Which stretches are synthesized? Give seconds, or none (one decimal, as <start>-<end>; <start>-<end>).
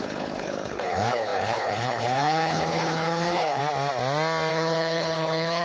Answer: 0.0-3.6; 4.5-5.6